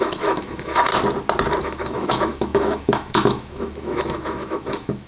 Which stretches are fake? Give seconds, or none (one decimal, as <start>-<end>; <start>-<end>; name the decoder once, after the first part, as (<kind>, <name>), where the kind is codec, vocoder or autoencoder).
0.0-0.9 (autoencoder, DAC-VAE); 1.6-5.1